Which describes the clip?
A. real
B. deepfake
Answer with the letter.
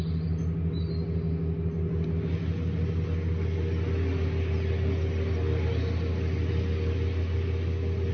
A